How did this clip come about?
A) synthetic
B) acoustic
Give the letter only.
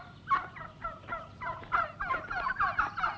B